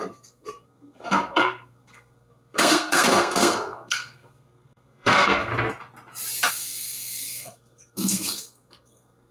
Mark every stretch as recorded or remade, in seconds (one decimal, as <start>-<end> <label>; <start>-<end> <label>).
0.0-5.5 remade; 5.5-6.5 recorded; 6.5-9.3 remade